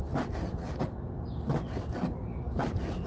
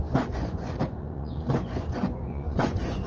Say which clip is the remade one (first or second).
second